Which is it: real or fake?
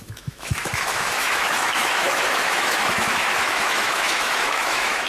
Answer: fake